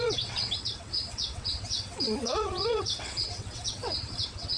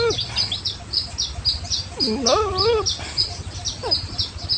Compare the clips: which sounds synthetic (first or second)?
first